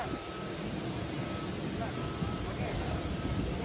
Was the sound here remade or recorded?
recorded